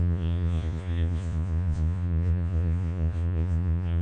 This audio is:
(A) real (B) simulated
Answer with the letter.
B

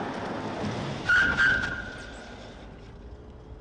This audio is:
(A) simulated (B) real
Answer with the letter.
B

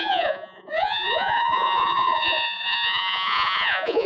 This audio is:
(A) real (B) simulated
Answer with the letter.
B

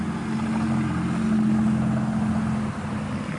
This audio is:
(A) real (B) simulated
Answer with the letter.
A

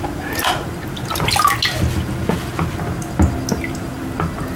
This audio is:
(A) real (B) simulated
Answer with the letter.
A